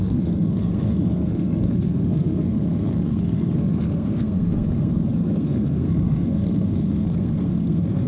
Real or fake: fake